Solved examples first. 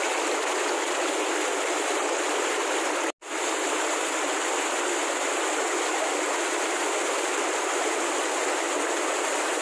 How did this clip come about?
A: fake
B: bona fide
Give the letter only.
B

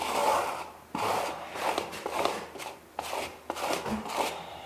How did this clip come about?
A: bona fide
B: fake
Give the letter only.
A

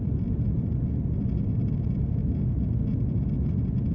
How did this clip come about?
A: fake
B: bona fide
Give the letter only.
B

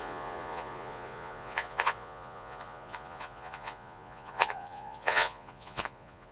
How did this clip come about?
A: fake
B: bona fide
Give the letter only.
A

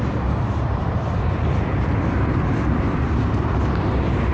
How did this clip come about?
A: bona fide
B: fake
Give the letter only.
A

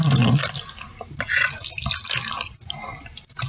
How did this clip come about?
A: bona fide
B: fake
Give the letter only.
A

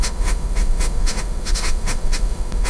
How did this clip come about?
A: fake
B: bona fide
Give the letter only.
A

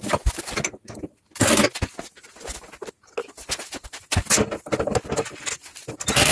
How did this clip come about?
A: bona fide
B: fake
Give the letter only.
A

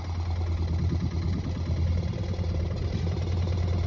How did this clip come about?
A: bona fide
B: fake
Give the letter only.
A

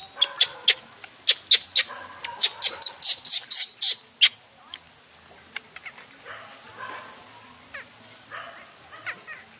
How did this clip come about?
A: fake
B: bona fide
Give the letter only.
B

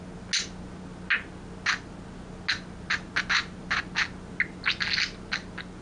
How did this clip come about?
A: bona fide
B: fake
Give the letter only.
A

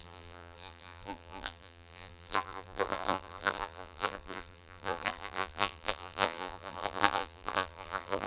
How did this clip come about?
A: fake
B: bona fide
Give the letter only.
A